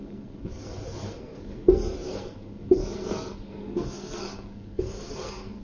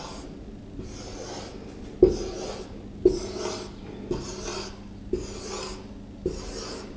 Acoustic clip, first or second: second